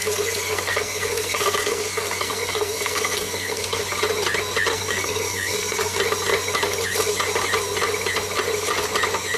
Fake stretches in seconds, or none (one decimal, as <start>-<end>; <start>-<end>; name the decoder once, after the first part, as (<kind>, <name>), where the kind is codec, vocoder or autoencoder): 0.0-3.8 (codec, SNAC); 4.7-6.0